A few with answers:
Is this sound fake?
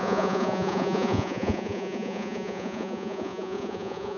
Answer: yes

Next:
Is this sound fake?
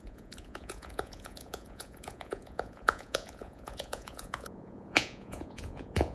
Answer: yes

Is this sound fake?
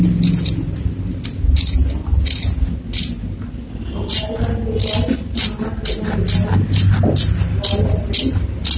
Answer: no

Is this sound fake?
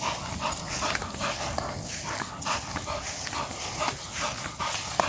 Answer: no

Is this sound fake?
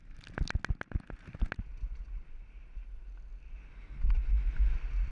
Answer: no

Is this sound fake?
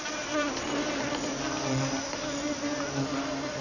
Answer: no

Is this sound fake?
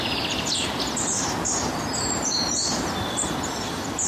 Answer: no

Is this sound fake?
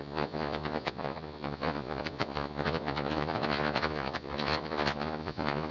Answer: yes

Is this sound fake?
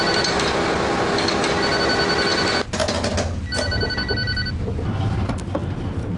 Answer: no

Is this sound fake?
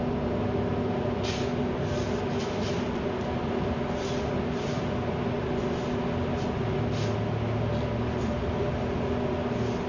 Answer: no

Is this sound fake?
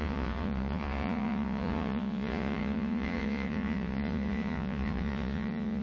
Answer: yes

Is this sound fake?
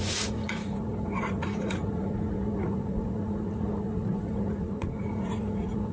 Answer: yes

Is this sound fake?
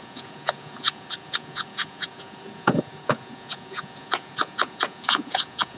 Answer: yes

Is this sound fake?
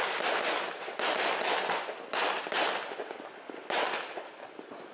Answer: no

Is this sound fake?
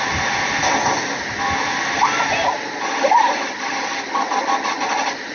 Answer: no